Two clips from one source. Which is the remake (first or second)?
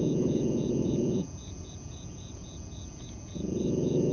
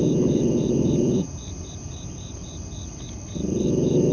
first